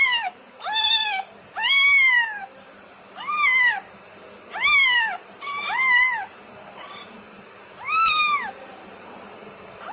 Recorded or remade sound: remade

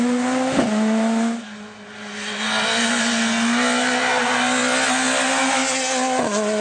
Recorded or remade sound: recorded